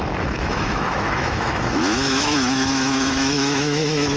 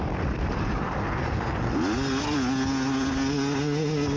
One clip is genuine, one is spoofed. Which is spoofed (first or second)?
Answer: first